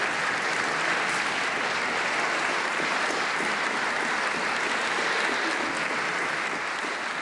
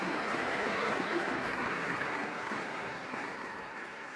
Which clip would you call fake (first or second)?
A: second